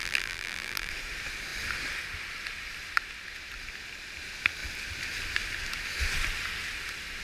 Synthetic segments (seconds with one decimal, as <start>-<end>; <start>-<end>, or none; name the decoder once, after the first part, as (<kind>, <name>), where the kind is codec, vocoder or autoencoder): 0.0-0.9 (vocoder, BigVGAN v2)

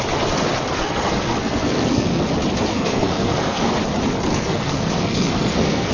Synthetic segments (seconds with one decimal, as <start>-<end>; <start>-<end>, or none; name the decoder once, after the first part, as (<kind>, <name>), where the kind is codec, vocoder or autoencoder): 0.8-2.3 (codec, SNAC); 2.7-3.7; 4.3-5.9

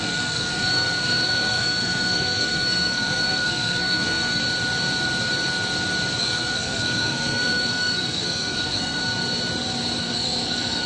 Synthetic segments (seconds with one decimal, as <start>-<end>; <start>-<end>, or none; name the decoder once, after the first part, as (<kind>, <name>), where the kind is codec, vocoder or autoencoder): 0.0-4.4 (codec, SNAC); 6.2-9.0; 10.0-10.9

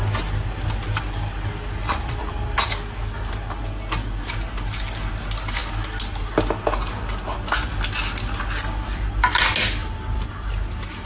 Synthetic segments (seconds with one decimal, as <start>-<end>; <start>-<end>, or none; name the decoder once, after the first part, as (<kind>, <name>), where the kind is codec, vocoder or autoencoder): 1.8-2.6 (vocoder, BigVGAN v2); 9.8-10.5

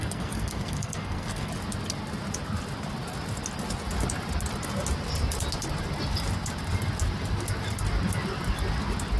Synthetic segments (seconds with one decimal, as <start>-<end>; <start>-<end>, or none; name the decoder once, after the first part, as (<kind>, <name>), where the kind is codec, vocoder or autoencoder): 0.0-1.5 (codec, SNAC)

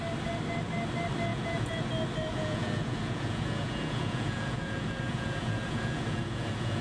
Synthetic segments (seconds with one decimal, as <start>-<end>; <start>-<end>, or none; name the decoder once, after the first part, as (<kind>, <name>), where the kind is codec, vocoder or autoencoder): 1.3-1.8 (vocoder, Vocos); 2.3-6.8

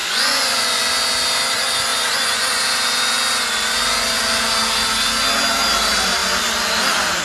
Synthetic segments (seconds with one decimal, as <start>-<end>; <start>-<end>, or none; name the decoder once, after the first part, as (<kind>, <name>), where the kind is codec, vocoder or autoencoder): 0.0-0.8 (vocoder, Vocos); 1.9-2.6

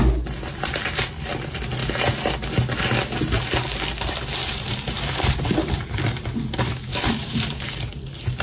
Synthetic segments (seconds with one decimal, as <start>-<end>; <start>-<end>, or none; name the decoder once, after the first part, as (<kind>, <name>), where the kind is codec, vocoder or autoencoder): 4.4-6.0 (vocoder, BigVGAN v2); 6.9-7.7